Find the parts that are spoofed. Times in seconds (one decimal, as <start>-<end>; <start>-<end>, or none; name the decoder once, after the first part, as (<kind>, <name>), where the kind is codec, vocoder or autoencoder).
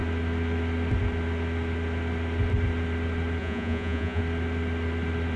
3.4-4.2 (vocoder, Vocos)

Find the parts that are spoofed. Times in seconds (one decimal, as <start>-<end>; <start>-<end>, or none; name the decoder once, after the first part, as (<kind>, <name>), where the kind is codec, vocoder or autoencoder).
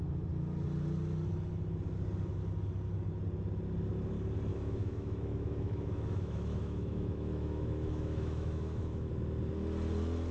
4.5-9.1 (autoencoder, DAC-VAE)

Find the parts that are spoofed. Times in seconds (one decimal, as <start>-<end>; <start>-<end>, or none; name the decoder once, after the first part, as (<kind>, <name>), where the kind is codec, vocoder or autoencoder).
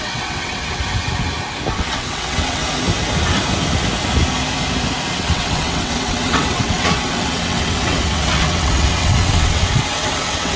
0.0-0.8 (vocoder, WaveNeXt); 1.7-2.6; 5.2-10.6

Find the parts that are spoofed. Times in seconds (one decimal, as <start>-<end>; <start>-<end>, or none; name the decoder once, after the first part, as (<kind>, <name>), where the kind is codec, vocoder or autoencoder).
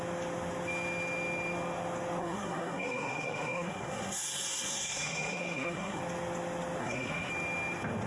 2.2-6.0 (codec, SNAC); 6.8-7.3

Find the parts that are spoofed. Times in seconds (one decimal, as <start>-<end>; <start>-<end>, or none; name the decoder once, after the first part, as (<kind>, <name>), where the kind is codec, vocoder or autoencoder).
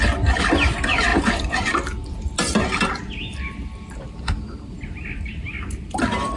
none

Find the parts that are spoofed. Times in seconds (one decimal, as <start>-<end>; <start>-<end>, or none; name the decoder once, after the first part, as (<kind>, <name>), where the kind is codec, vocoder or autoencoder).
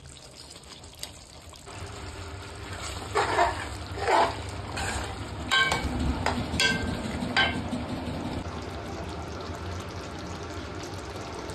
0.5-3.3 (vocoder, BigVGAN v2); 5.2-6.4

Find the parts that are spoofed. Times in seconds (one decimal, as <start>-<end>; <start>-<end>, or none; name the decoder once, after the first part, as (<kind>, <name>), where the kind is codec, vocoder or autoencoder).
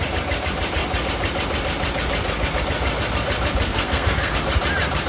3.7-4.3 (codec, SNAC)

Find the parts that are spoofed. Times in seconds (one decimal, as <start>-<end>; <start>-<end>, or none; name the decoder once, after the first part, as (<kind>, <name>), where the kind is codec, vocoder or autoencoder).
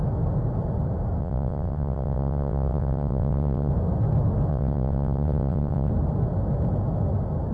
1.2-3.7 (vocoder, WaveNeXt); 4.5-5.9